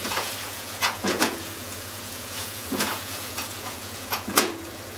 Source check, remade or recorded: remade